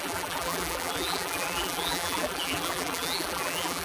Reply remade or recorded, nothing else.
remade